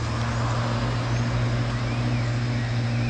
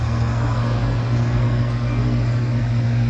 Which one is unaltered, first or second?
first